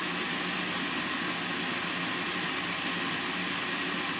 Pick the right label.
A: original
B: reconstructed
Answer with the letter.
A